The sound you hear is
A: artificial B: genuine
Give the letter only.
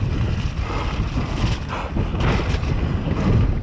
B